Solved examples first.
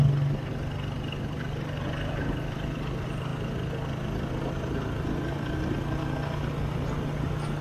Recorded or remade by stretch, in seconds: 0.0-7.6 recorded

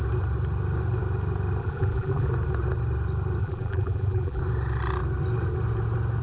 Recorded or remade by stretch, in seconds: 0.0-1.6 recorded; 1.6-2.3 remade; 2.3-3.4 recorded; 3.4-4.4 remade; 4.4-6.2 recorded

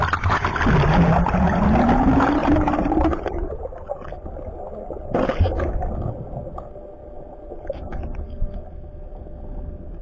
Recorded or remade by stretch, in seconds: 0.0-2.4 recorded; 2.4-3.5 remade; 3.5-7.0 recorded; 7.0-7.9 remade; 7.9-10.0 recorded

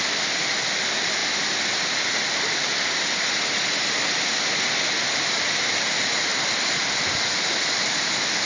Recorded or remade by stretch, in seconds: 0.0-8.5 recorded

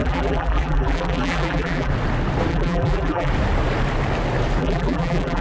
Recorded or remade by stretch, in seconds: 0.0-1.9 remade; 1.9-2.5 recorded; 2.5-3.3 remade; 3.3-4.6 recorded; 4.6-5.4 remade

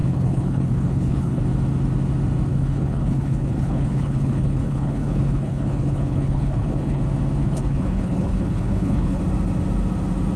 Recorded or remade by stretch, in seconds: 0.0-1.4 remade; 1.4-2.5 recorded; 2.5-7.0 remade; 7.0-7.4 recorded; 7.4-9.2 remade; 9.2-10.4 recorded

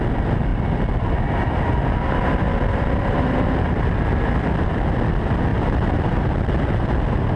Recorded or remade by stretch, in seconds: 0.0-0.5 recorded; 0.5-4.9 remade; 4.9-5.5 recorded; 5.5-6.2 remade; 6.2-7.4 recorded

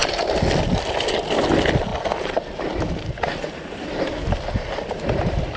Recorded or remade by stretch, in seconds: 0.0-5.6 recorded